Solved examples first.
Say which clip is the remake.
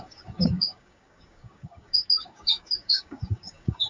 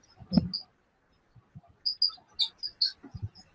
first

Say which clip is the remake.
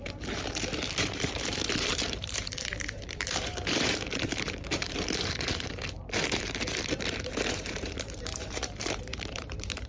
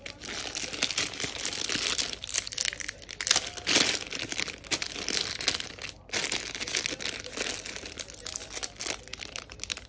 first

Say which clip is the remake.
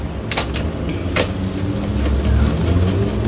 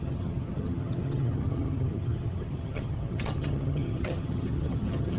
second